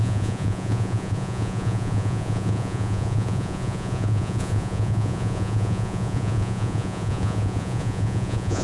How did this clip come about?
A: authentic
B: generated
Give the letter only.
B